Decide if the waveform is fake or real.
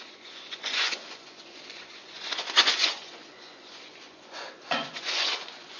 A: fake